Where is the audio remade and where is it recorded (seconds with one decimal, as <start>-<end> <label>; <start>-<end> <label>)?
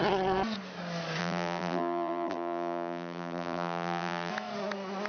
0.0-1.2 recorded; 1.2-4.3 remade; 4.3-5.1 recorded